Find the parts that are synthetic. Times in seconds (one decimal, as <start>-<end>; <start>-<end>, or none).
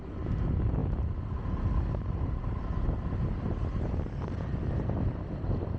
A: none